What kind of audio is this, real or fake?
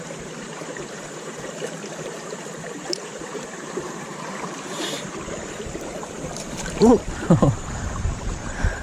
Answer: fake